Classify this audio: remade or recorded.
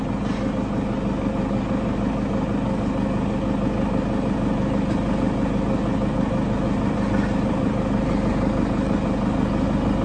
recorded